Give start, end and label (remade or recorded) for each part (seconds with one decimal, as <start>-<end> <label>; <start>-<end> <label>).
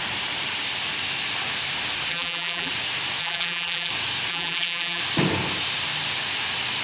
0.0-2.1 recorded; 2.1-2.7 remade; 2.7-3.2 recorded; 3.2-3.9 remade; 3.9-4.3 recorded; 4.3-5.0 remade; 5.0-6.8 recorded